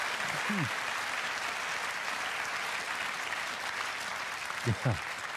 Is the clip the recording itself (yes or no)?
yes